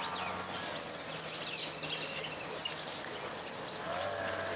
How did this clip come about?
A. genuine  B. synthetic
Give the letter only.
A